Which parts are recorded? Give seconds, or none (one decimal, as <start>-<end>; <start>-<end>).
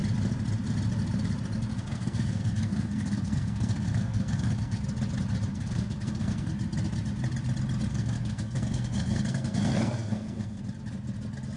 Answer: 0.0-1.7; 4.8-5.5; 6.5-7.9; 10.6-11.6